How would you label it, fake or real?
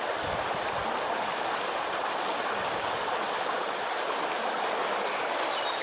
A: real